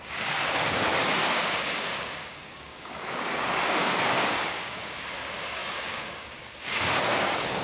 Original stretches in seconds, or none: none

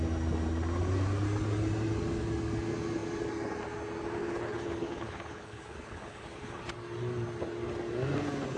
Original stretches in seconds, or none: 0.0-4.2; 6.6-8.6

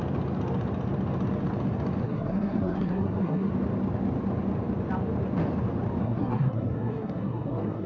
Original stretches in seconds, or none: 0.0-2.0; 3.5-6.0

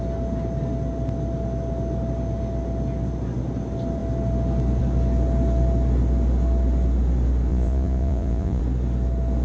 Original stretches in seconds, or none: 0.0-7.5; 8.6-9.4

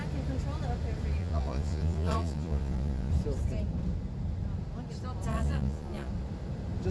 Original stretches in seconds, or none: 0.0-1.2; 3.1-5.3; 6.1-6.9

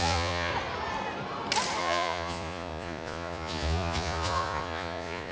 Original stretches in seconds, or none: 0.5-1.8

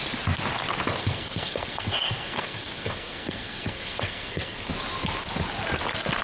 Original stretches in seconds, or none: 0.0-1.0; 4.7-6.2